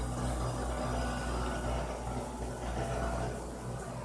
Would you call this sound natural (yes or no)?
yes